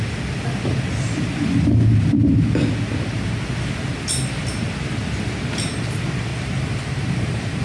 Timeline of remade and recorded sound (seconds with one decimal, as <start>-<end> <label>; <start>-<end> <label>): 0.0-6.3 recorded; 6.3-7.6 remade